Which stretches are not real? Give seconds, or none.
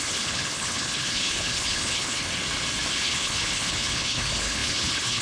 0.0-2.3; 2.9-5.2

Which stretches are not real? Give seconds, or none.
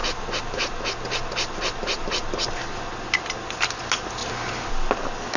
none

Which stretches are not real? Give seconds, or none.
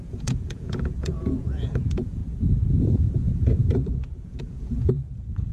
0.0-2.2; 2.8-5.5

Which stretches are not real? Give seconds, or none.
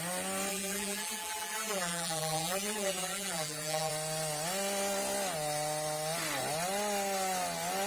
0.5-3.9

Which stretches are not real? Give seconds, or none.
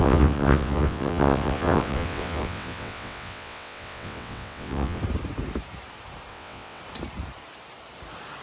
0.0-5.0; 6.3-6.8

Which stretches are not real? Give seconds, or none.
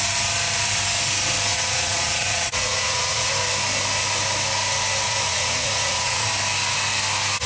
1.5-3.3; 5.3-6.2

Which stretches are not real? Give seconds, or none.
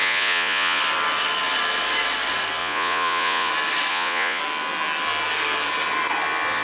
0.0-0.8; 2.6-3.5; 3.9-4.4